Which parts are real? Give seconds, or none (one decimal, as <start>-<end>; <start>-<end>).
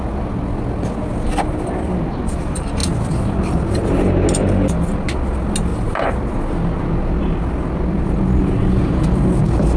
0.0-9.8